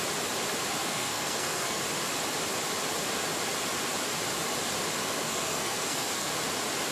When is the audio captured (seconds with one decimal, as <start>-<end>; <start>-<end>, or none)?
0.0-0.8; 1.8-5.0; 6.3-6.9